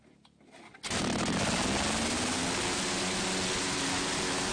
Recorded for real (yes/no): yes